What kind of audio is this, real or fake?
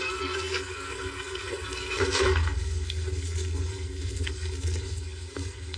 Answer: fake